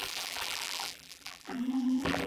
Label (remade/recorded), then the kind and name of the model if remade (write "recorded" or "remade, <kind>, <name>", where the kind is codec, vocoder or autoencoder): remade, vocoder, BigVGAN v2